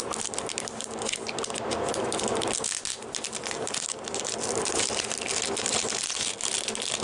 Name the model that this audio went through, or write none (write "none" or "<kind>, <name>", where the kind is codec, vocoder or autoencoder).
none